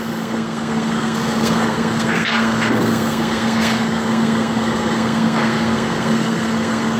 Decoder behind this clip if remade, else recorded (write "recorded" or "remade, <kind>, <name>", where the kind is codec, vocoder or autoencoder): remade, codec, SNAC